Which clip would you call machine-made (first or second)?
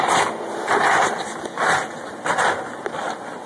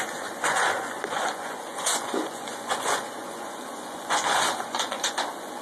second